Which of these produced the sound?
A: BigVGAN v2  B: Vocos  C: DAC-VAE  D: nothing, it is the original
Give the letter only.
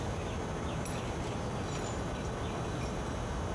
D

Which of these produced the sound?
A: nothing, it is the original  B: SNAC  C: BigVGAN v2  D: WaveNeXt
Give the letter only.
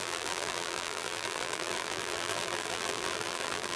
C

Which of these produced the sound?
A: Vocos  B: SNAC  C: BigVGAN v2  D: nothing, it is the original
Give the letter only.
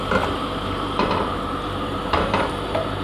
C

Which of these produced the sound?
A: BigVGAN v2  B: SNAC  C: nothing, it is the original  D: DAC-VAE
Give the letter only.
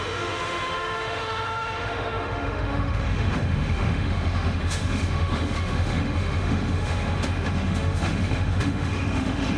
D